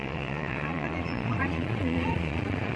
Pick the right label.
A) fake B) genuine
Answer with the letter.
A